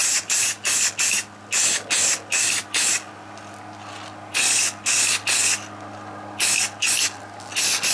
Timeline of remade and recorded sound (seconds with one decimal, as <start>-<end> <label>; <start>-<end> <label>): 0.0-0.5 remade; 0.5-7.9 recorded